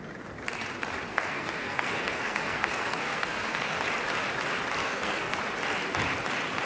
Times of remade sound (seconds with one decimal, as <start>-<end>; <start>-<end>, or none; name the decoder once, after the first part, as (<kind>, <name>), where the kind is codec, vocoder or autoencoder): 1.1-3.8 (codec, SNAC); 4.8-5.4